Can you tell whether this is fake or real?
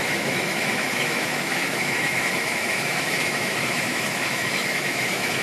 fake